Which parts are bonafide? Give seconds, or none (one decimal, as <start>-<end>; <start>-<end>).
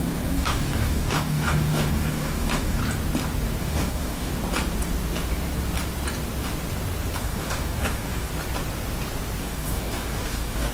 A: 2.8-3.6; 4.3-7.2; 8.3-9.4